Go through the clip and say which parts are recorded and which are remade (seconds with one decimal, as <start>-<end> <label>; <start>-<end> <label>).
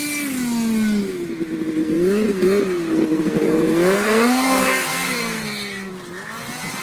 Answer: 0.0-1.8 recorded; 1.8-5.9 remade; 5.9-6.8 recorded